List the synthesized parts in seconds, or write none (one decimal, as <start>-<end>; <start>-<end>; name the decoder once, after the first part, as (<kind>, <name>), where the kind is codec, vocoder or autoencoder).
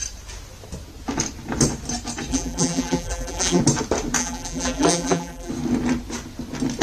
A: 2.3-3.6 (vocoder, BigVGAN v2); 4.2-5.5